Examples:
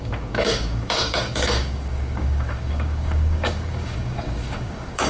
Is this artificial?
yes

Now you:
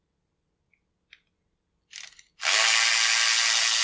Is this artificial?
no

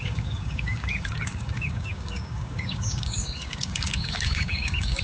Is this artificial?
yes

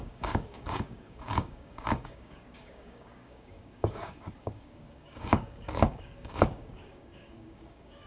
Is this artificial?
yes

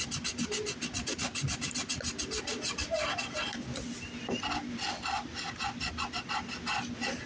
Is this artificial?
no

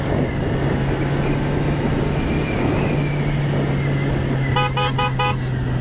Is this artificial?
no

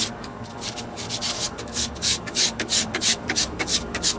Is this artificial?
yes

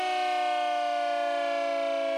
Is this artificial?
no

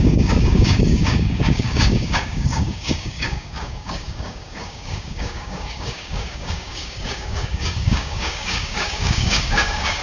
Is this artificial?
yes